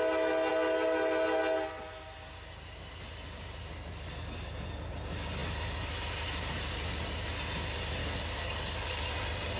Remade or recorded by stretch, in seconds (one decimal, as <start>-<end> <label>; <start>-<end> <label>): 0.0-8.0 recorded; 8.0-9.1 remade; 9.1-9.6 recorded